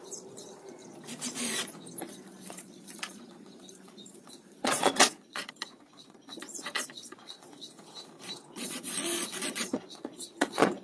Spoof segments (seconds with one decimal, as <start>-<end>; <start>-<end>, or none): 0.0-0.8; 2.0-7.7; 8.5-10.8